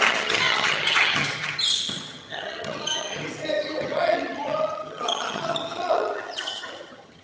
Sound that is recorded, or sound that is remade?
remade